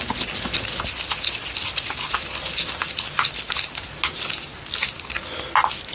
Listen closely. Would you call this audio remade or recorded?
recorded